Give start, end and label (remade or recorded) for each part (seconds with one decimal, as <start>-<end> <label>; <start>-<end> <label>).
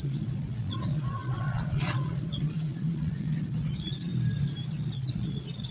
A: 0.0-4.1 remade; 4.1-4.7 recorded; 4.7-5.7 remade